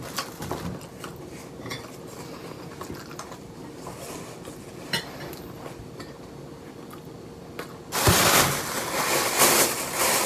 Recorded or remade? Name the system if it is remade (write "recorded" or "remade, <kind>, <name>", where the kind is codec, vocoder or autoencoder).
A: recorded